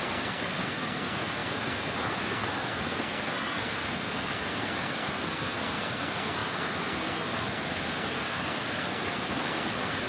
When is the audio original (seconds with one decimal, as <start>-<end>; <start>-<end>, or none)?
none